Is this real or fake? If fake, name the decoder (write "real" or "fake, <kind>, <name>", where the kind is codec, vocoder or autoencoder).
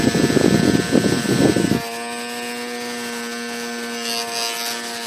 real